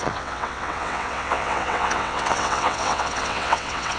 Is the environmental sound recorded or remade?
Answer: remade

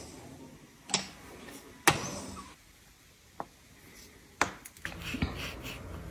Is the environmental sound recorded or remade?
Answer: recorded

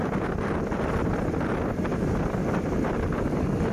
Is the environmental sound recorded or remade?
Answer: recorded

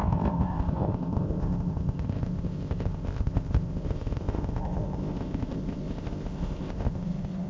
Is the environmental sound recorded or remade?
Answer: remade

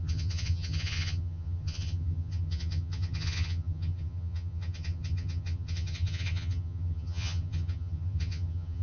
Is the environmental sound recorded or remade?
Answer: remade